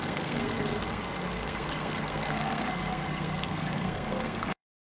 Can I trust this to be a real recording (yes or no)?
no